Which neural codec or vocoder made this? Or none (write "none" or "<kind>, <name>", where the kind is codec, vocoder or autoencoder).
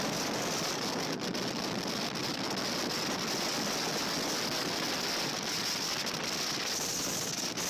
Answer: none